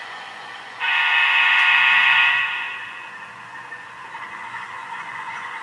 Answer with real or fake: fake